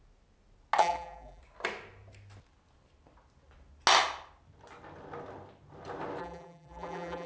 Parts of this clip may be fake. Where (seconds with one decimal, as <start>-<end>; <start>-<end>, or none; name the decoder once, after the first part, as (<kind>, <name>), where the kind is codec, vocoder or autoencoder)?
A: 0.8-1.4 (vocoder, BigVGAN v2); 6.2-7.3